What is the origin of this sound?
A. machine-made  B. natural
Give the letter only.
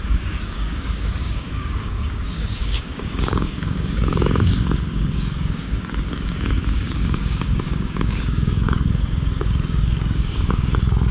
A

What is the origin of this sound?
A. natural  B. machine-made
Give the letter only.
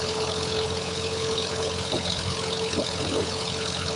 B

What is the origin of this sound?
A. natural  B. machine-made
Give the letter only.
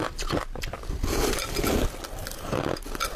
A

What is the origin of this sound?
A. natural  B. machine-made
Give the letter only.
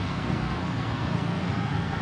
B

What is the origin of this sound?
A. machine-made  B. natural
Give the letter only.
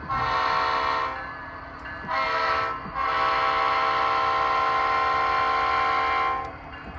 B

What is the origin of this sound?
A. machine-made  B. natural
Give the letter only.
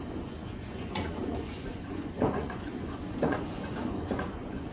A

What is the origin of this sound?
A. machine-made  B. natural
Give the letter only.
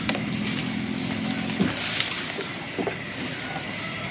B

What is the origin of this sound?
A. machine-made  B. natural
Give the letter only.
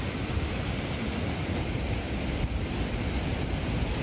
B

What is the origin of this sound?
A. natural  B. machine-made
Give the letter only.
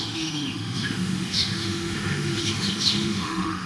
B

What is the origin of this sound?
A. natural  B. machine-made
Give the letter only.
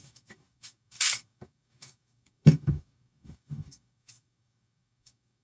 B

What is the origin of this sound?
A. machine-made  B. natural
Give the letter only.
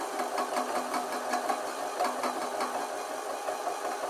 B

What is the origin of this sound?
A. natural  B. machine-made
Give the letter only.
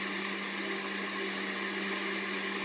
A